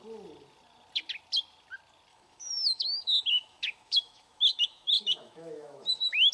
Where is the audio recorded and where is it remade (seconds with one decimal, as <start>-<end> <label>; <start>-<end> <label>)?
0.0-2.1 recorded; 2.1-6.3 remade